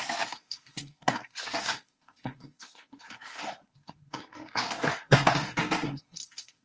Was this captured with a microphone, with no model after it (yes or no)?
no